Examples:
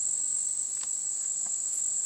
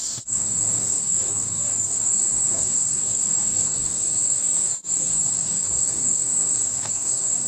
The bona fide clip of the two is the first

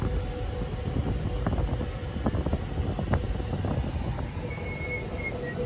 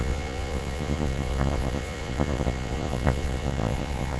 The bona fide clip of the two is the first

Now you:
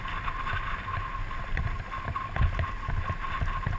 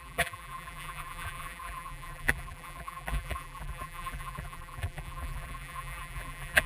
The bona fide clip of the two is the first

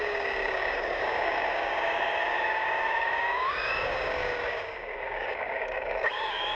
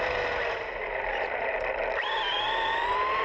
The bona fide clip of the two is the second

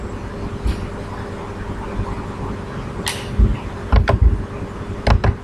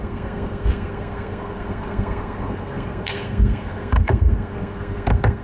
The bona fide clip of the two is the first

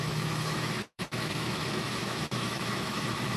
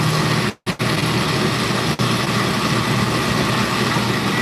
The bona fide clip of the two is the second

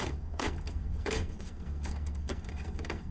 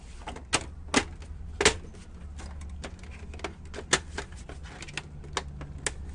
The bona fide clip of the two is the second